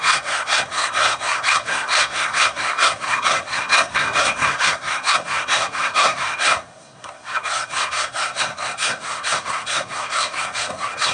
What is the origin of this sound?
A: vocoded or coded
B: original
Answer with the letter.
A